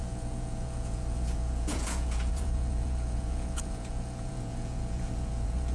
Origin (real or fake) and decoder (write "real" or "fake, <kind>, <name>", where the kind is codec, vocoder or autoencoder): fake, vocoder, Vocos